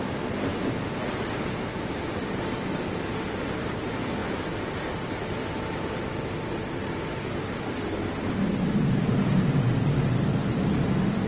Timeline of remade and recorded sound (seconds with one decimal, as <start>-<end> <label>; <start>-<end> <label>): 0.0-0.5 recorded; 0.5-3.7 remade; 3.7-11.3 recorded